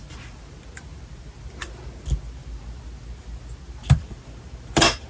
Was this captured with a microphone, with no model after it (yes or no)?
yes